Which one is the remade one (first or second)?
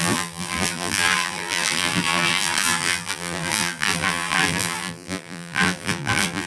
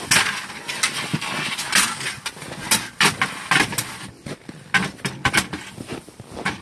first